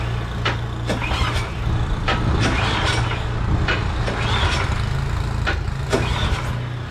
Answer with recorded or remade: recorded